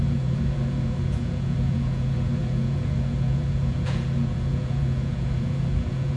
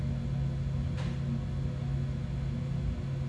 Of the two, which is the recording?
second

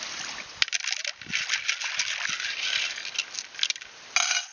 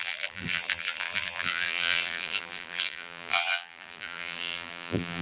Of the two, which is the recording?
first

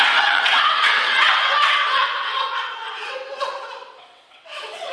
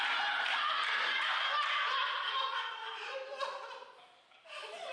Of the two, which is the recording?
second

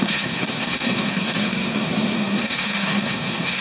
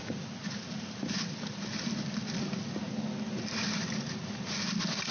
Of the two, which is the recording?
second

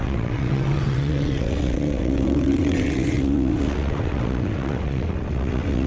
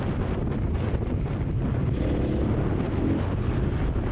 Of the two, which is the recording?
second